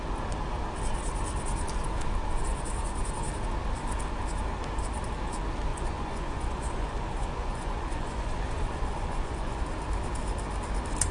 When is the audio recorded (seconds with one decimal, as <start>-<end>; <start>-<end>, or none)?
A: 0.0-2.5; 3.1-5.7; 9.6-11.1